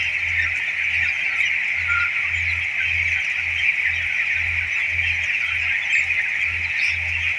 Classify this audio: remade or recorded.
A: recorded